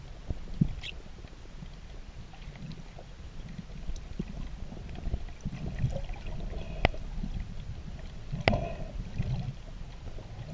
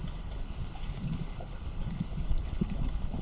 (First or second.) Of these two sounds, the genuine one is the first